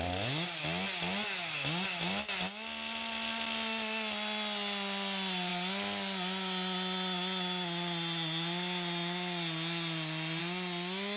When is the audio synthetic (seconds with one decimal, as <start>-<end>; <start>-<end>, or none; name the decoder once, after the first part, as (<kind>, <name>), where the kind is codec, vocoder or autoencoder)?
none